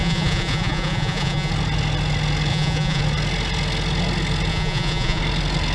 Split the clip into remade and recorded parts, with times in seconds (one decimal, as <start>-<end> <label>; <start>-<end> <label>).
0.0-1.5 remade; 1.5-2.5 recorded; 2.5-3.0 remade; 3.0-4.5 recorded; 4.5-5.2 remade; 5.2-5.7 recorded